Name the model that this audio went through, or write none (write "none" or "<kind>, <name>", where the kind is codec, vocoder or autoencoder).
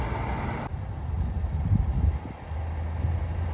none